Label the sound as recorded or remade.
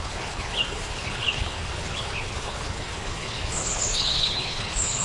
remade